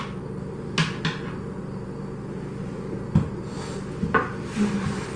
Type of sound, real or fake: real